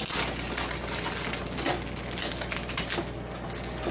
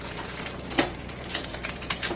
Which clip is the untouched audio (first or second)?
first